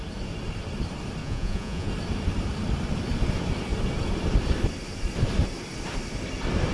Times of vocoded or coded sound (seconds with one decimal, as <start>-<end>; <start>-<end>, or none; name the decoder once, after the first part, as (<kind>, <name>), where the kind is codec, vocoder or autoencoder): 1.2-1.9 (vocoder, Vocos)